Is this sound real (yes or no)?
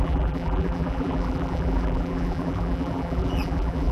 no